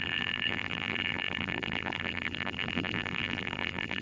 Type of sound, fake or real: fake